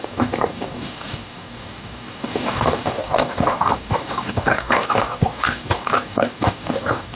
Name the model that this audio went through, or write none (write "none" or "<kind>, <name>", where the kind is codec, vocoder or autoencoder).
codec, DAC